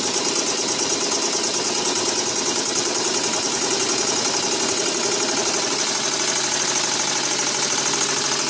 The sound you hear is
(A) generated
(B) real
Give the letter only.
B